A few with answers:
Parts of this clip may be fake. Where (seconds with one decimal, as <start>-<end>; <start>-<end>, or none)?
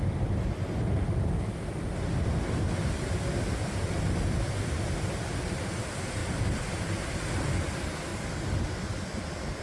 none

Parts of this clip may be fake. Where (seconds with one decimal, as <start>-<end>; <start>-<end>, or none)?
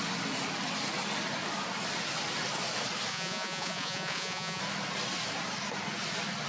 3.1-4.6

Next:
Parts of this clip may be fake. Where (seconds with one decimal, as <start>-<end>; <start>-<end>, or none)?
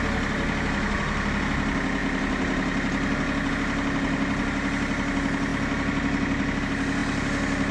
none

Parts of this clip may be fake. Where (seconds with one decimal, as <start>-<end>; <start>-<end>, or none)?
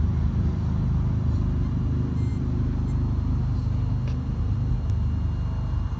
none